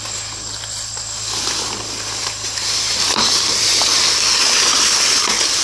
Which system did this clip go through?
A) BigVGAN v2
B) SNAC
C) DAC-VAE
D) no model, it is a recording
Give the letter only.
D